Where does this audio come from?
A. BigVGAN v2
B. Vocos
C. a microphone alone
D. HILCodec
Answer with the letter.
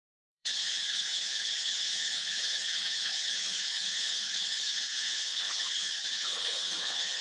D